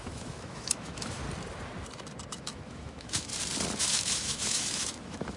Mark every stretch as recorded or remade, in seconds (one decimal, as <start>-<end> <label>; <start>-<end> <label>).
0.0-1.2 remade; 1.2-2.3 recorded; 2.3-3.3 remade; 3.3-3.8 recorded; 3.8-5.4 remade